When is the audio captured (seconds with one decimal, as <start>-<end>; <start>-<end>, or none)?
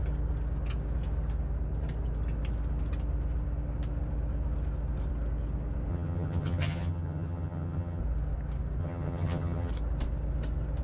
0.0-5.9; 8.0-8.8; 9.7-10.8